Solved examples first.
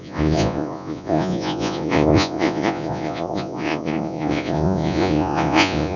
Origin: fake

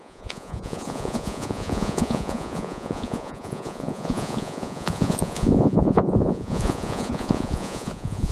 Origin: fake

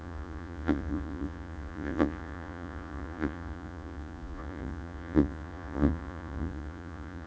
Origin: fake